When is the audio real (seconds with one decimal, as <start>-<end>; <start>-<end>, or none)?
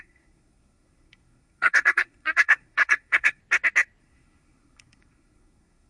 3.4-4.0